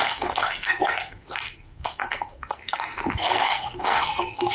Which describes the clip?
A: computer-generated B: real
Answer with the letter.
A